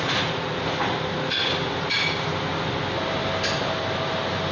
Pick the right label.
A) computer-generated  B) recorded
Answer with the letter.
B